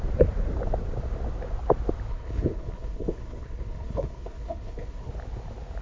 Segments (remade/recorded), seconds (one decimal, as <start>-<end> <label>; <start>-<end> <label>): 0.0-2.1 recorded; 2.1-5.1 remade; 5.1-5.8 recorded